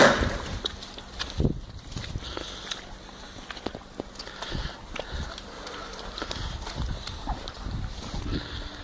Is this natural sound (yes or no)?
yes